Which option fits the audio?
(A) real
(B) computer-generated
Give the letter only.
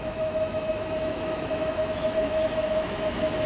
B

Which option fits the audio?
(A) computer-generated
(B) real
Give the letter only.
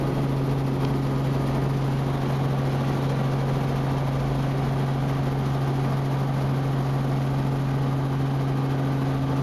B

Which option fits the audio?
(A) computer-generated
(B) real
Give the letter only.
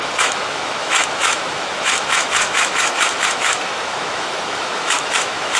A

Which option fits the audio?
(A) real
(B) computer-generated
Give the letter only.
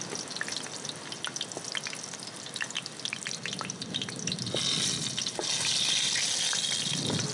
A